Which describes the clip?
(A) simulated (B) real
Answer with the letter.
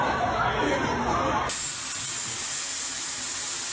B